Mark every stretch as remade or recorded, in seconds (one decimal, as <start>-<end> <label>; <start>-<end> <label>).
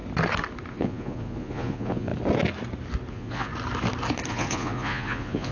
0.0-0.7 recorded; 0.7-2.1 remade; 2.1-3.1 recorded; 3.1-3.5 remade; 3.5-4.3 recorded; 4.3-5.5 remade